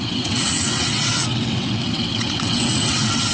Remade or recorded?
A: remade